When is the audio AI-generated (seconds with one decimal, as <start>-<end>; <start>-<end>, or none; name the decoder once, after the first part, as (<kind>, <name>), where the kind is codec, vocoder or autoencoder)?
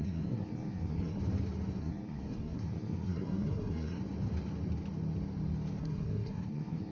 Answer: 0.0-1.2 (codec, SNAC); 1.8-4.0; 5.8-6.9